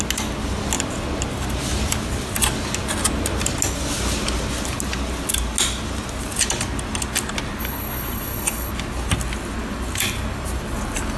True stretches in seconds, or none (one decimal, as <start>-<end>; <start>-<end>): 0.0-7.6; 8.7-11.2